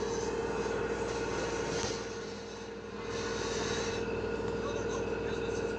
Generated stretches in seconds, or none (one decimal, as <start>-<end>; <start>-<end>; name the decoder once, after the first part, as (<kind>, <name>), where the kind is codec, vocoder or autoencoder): none